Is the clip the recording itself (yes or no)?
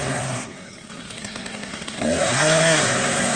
no